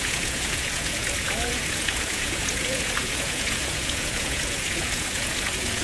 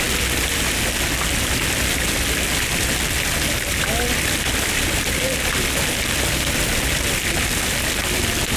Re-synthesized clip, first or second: first